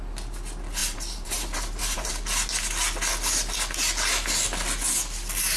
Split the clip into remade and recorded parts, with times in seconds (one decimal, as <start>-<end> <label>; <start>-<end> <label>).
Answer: 0.0-0.8 recorded; 0.8-2.1 remade; 2.1-5.6 recorded

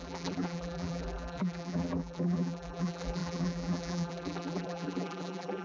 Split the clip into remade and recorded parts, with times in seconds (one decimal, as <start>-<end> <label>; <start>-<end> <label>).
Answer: 0.0-5.6 remade

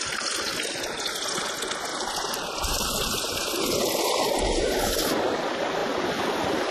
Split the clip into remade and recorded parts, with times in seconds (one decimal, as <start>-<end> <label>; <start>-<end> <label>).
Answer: 0.0-1.9 recorded; 1.9-3.6 remade; 3.6-6.7 recorded